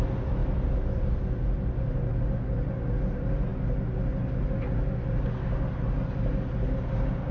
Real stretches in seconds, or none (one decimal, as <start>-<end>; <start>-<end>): 0.0-7.3